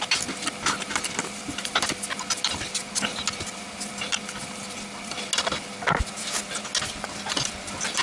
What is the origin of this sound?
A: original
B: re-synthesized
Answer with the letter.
A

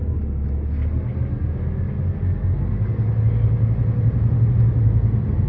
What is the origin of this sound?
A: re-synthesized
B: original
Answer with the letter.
B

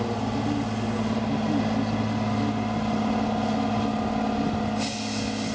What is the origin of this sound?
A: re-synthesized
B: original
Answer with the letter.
B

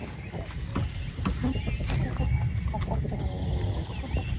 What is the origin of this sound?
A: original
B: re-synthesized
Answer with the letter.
A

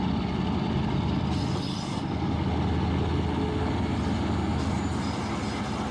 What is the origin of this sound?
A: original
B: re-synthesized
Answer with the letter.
A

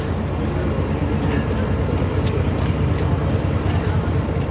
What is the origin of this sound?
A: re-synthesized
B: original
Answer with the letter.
B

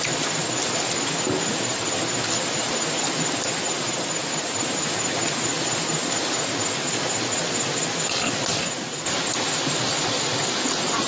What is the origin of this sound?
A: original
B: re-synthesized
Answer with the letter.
A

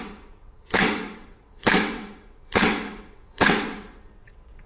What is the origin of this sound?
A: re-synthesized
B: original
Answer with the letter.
A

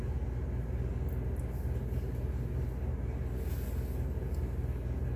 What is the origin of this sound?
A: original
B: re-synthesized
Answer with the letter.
A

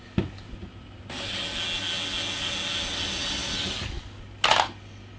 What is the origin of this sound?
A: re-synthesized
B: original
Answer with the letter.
B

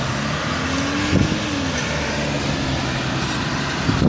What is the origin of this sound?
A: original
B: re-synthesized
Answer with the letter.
A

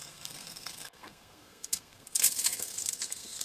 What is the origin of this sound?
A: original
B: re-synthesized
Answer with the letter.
B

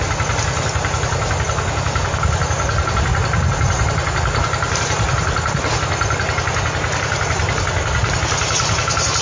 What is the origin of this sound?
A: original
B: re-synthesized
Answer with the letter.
A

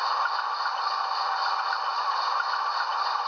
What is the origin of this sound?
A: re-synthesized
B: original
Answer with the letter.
B